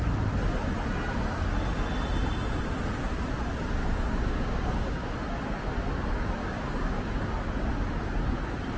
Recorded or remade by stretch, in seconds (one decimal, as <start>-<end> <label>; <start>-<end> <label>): 0.0-3.8 recorded; 3.8-5.1 remade; 5.1-6.4 recorded; 6.4-7.1 remade; 7.1-8.8 recorded